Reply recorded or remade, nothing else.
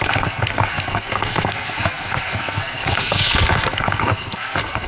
remade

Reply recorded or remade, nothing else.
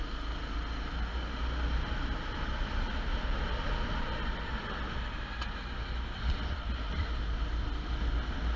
recorded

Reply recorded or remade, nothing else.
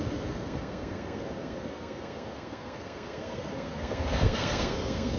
remade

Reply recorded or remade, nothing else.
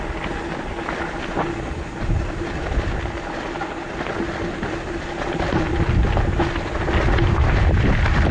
recorded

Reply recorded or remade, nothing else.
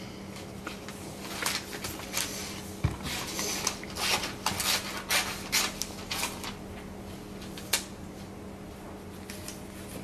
recorded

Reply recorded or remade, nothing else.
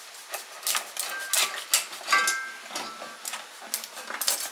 recorded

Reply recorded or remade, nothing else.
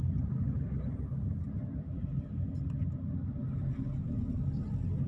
recorded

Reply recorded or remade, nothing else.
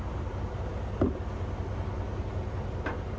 recorded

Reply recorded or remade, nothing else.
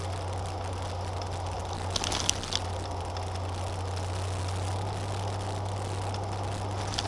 recorded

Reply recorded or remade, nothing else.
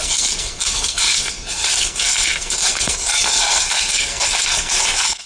remade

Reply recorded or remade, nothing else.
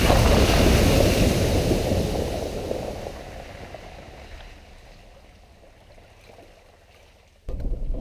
recorded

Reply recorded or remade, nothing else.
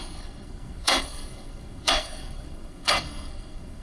remade